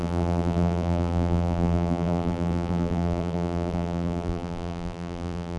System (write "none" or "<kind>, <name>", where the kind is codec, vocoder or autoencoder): vocoder, BigVGAN v2